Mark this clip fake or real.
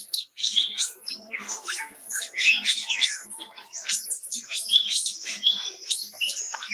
fake